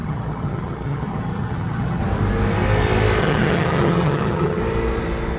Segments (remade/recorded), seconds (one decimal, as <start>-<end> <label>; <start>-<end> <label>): 0.0-2.0 remade; 2.0-3.2 recorded; 3.2-4.6 remade; 4.6-5.4 recorded